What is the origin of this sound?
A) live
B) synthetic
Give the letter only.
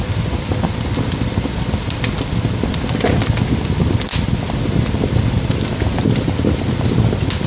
A